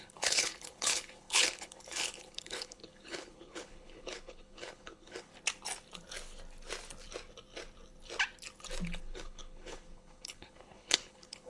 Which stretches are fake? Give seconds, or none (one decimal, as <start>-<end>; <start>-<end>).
0.0-5.3; 9.0-11.5